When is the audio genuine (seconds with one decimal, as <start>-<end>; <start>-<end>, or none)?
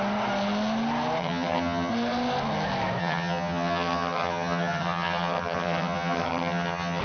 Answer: 0.0-1.2; 1.9-3.0